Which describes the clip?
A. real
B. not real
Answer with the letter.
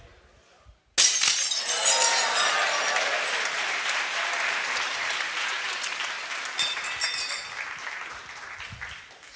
A